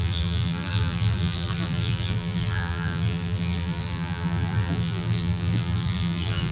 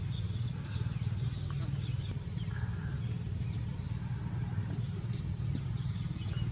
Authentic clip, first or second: second